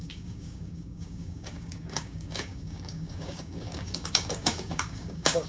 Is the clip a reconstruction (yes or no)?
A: yes